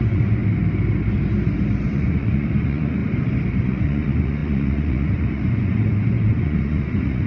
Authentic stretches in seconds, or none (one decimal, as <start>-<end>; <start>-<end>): 0.4-1.9; 3.0-3.6